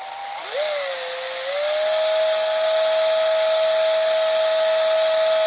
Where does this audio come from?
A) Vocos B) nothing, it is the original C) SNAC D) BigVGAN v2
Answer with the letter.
B